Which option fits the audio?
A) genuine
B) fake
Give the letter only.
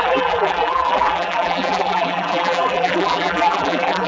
B